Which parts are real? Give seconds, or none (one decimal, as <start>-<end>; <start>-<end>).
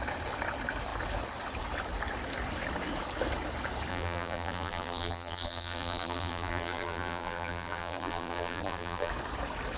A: 0.0-3.9; 9.1-9.8